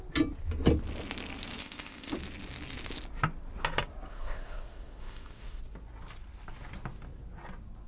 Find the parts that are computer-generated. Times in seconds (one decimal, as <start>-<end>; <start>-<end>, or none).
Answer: 1.6-2.1; 4.1-5.6

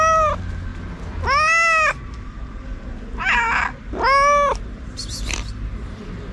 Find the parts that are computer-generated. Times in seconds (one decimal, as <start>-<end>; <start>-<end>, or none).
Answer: none

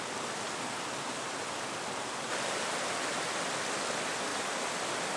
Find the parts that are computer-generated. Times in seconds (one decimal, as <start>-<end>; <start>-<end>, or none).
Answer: none